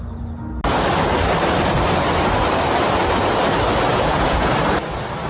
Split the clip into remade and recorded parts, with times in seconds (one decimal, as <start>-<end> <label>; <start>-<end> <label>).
0.0-3.9 recorded; 3.9-4.5 remade; 4.5-5.3 recorded